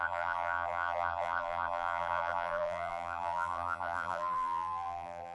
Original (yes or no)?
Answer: no